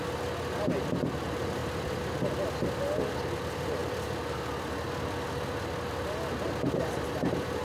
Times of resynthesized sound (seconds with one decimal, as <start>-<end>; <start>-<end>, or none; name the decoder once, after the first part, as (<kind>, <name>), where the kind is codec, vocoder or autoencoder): none